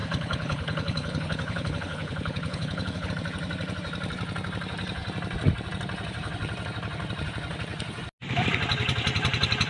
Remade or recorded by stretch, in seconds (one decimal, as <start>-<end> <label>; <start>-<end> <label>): 0.0-3.1 remade; 3.1-9.7 recorded